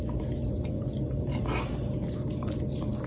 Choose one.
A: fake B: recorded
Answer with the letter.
B